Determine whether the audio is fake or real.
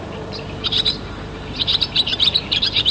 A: fake